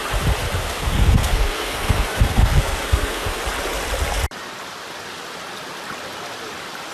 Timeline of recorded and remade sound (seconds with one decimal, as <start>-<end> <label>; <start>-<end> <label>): 0.0-0.6 recorded; 0.6-3.4 remade; 3.4-6.9 recorded